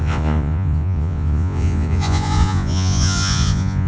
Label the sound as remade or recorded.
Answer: remade